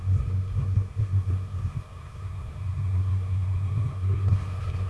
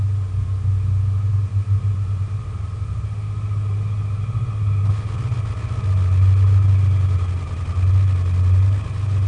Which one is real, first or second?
second